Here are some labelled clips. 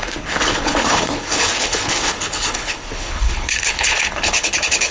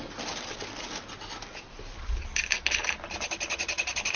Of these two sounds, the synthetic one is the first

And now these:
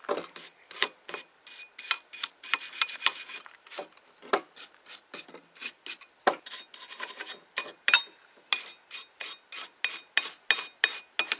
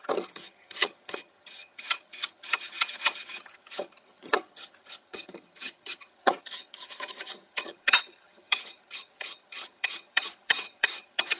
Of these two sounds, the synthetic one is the second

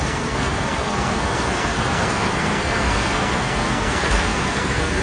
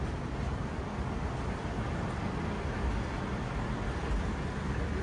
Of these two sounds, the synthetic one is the first